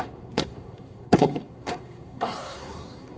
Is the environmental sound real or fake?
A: fake